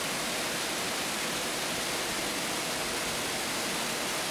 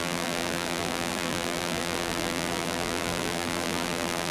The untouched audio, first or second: first